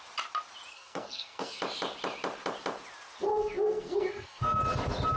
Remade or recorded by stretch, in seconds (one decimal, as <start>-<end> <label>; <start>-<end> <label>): 0.0-0.7 recorded; 0.7-1.6 remade; 1.6-3.3 recorded; 3.3-4.6 remade; 4.6-5.2 recorded